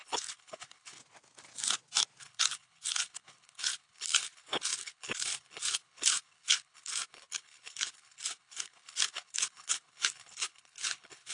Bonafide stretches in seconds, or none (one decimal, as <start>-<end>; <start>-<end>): 1.0-2.2